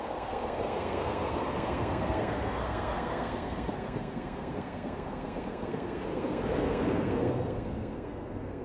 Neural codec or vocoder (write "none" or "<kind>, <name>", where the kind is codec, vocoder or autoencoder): codec, SNAC